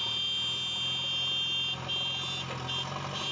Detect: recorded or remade recorded